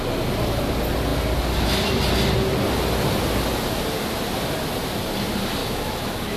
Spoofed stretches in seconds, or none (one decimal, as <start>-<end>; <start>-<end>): 5.6-6.4